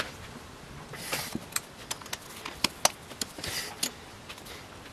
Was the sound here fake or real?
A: real